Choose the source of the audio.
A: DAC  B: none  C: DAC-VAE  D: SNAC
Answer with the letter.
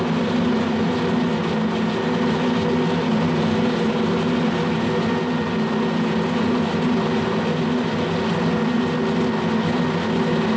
B